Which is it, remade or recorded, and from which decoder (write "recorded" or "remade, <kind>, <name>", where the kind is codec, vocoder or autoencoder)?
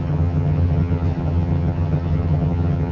remade, vocoder, HiFi-GAN